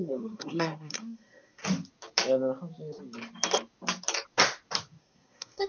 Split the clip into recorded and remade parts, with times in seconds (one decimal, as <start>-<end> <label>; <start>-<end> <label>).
0.0-1.6 remade; 1.6-5.0 recorded; 5.0-5.7 remade